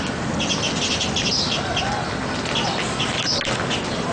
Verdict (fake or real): real